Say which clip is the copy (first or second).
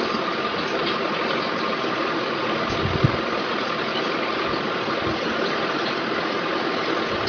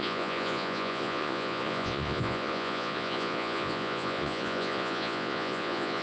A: second